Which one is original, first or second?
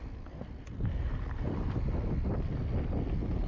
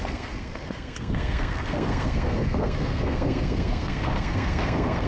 first